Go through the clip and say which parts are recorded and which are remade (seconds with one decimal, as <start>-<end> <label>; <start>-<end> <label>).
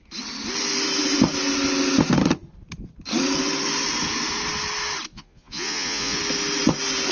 0.0-5.1 recorded; 5.1-6.2 remade; 6.2-7.1 recorded